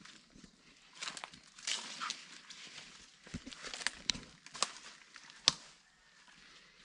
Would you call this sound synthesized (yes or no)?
no